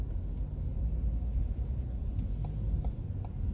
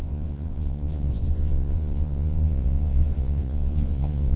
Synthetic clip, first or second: second